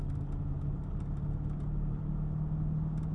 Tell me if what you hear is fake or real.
real